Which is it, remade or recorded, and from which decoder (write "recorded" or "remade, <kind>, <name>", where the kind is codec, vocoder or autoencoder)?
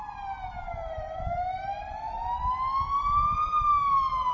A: recorded